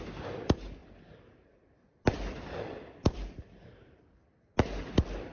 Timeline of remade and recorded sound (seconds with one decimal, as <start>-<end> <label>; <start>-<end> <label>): 0.0-0.8 recorded; 0.8-4.0 remade; 4.0-5.3 recorded